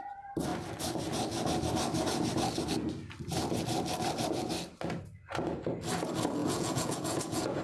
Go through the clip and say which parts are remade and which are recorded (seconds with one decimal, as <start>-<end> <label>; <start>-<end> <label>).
0.0-6.4 recorded; 6.4-7.6 remade